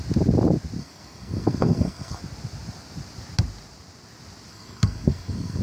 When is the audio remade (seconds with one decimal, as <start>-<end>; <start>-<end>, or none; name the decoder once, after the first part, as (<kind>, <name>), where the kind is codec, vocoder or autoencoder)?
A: 0.8-2.2 (codec, SNAC); 4.5-5.6